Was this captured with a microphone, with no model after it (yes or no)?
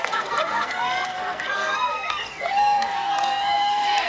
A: no